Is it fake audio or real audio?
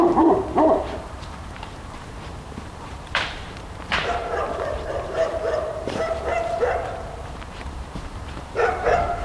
fake